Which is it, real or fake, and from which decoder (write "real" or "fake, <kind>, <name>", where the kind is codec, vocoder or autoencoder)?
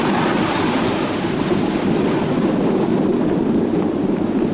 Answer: real